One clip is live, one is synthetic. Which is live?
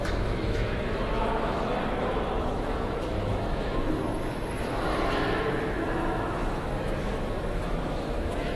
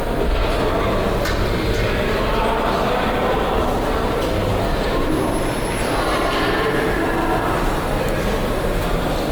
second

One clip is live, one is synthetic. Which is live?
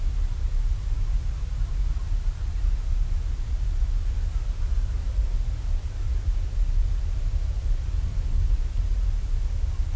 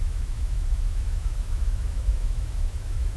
first